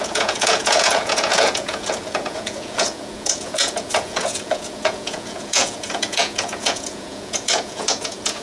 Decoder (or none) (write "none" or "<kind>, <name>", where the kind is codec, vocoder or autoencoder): vocoder, Vocos